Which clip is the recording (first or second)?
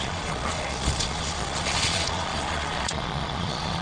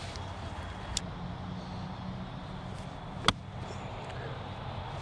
second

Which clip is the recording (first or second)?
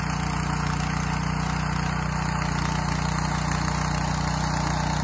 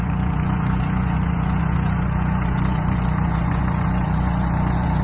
first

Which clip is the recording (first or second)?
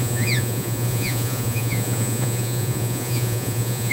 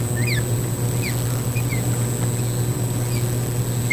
second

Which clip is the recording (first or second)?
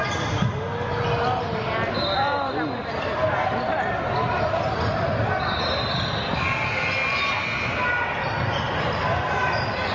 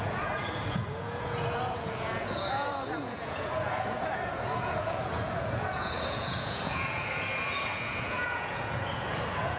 first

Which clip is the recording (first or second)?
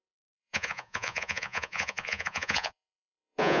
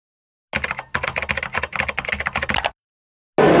second